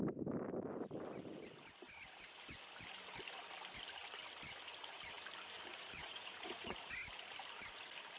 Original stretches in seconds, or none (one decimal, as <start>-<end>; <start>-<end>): 0.0-5.7; 6.9-8.2